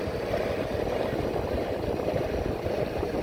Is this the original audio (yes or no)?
no